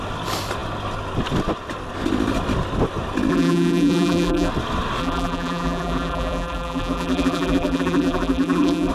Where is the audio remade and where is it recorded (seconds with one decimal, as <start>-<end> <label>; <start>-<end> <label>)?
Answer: 0.0-3.3 recorded; 3.3-4.5 remade; 4.5-5.0 recorded; 5.0-8.9 remade